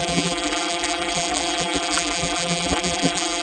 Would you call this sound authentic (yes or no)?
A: no